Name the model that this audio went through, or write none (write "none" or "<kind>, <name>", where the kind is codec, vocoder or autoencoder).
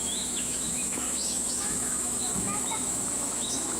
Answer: autoencoder, DAC-VAE